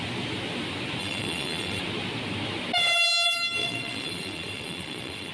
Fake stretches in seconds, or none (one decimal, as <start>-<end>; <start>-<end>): 1.0-1.8; 3.6-5.3